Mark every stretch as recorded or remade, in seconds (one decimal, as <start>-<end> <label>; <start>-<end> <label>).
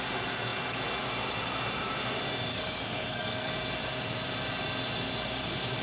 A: 0.0-2.5 recorded; 2.5-3.5 remade; 3.5-5.8 recorded